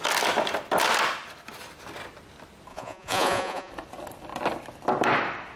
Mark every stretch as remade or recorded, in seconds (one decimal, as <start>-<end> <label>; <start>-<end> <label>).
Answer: 0.0-2.7 recorded; 2.7-3.7 remade; 3.7-5.6 recorded